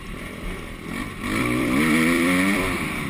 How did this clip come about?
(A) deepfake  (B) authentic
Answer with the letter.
A